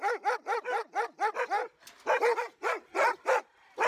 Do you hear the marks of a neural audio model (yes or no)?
no